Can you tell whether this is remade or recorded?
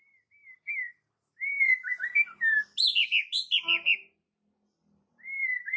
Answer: recorded